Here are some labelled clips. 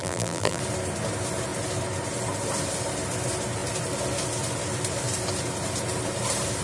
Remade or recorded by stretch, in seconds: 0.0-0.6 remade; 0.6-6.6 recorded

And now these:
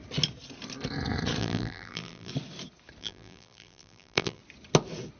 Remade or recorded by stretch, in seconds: 0.0-1.4 recorded; 1.4-2.3 remade; 2.3-3.0 recorded; 3.0-4.4 remade; 4.4-5.2 recorded

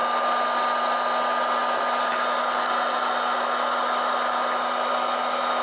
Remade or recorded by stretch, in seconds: 0.0-5.6 recorded

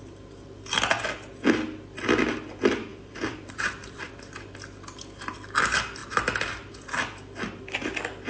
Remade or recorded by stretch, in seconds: 0.0-2.9 recorded; 2.9-4.1 remade; 4.1-8.3 recorded

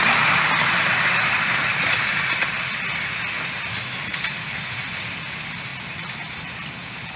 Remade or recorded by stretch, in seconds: 0.0-7.2 recorded

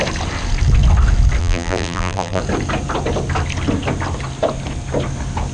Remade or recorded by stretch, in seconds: 0.0-1.4 recorded; 1.4-2.4 remade; 2.4-5.5 recorded

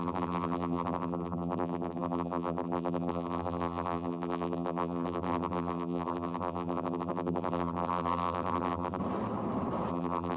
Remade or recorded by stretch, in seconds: 0.0-9.0 remade; 9.0-9.9 recorded; 9.9-10.4 remade